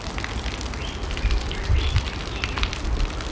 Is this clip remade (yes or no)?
yes